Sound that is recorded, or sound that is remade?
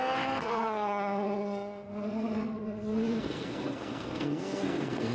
remade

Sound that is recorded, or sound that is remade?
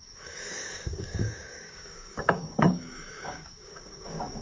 remade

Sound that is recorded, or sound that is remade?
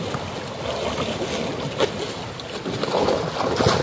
recorded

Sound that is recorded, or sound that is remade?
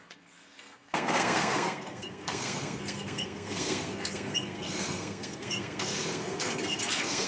remade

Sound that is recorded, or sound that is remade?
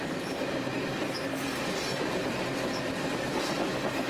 recorded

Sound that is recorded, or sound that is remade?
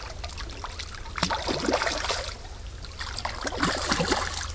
recorded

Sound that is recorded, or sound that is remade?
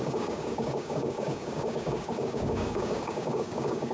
remade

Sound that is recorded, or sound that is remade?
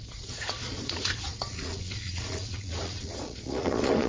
remade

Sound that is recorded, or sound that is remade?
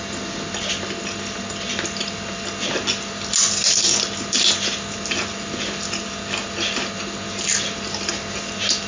recorded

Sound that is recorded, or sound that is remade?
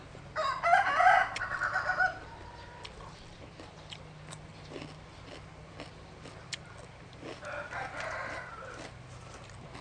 recorded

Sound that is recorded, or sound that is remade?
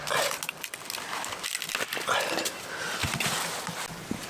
recorded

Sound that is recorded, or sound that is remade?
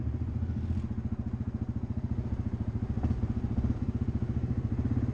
recorded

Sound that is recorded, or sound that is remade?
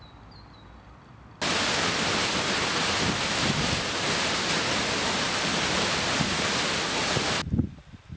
recorded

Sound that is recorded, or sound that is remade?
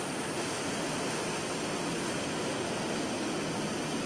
recorded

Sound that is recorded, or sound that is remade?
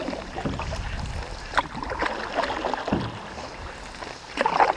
recorded